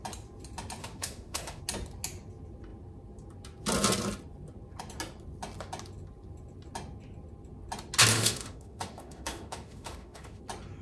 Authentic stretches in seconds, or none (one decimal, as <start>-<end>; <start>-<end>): 0.0-0.8; 1.6-8.1; 10.4-10.8